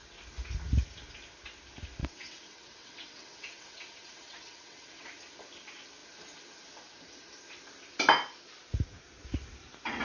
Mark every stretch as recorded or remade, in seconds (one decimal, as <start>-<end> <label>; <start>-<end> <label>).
0.0-2.0 recorded; 2.0-5.1 remade; 5.1-10.0 recorded